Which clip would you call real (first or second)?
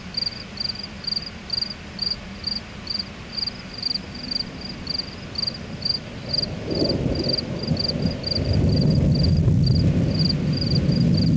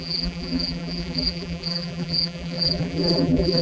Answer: first